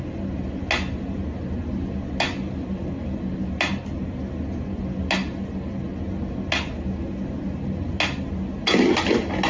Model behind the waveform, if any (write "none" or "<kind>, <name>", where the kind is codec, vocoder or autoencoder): none